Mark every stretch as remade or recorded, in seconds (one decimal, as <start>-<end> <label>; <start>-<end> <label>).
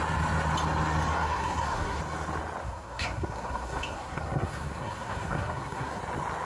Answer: 0.0-1.1 recorded; 1.1-2.0 remade; 2.0-2.6 recorded; 2.6-6.0 remade; 6.0-6.4 recorded